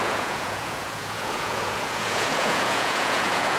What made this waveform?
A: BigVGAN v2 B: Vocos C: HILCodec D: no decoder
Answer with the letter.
B